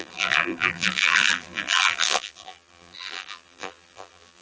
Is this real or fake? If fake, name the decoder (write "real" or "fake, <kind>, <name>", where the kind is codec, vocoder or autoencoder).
fake, vocoder, BigVGAN v2